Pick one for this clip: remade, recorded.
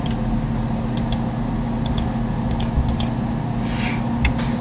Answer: recorded